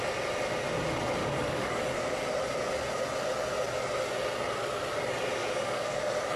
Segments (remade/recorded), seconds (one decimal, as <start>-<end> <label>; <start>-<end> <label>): 0.0-1.2 recorded; 1.2-1.8 remade; 1.8-5.4 recorded; 5.4-6.0 remade; 6.0-6.4 recorded